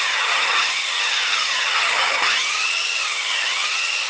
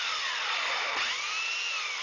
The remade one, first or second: first